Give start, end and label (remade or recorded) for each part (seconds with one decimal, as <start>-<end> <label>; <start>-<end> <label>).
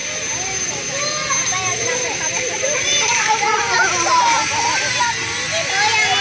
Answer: 0.0-1.7 recorded; 1.7-5.1 remade; 5.1-6.2 recorded